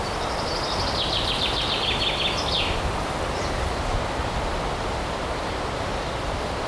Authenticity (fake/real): fake